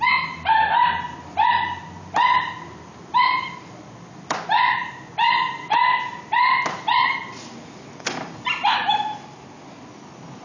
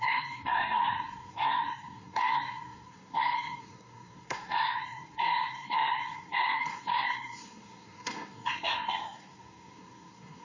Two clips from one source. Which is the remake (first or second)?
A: second